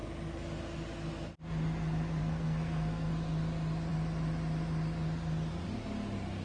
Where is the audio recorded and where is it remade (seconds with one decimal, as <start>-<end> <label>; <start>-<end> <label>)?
0.0-2.2 recorded; 2.2-3.1 remade; 3.1-6.4 recorded